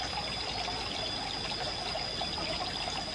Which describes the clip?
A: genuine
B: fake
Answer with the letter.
A